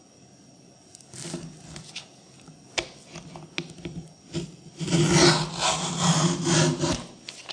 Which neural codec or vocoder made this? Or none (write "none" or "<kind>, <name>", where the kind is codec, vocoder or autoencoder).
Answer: none